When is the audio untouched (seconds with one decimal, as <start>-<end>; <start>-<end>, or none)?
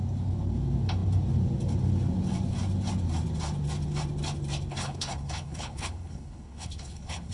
0.0-4.8